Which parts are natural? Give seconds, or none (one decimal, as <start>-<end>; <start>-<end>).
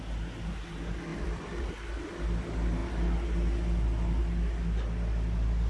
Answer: 0.0-1.1; 1.7-5.7